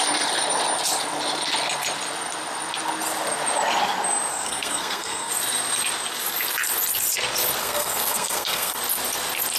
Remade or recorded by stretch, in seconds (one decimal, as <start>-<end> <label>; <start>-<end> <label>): 0.0-4.3 recorded; 4.3-5.3 remade; 5.3-7.6 recorded; 7.6-8.8 remade; 8.8-9.6 recorded

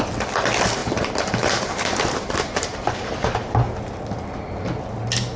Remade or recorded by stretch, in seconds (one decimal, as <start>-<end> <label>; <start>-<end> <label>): 0.0-0.8 recorded; 0.8-4.0 remade; 4.0-5.4 recorded